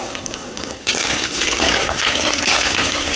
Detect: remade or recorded remade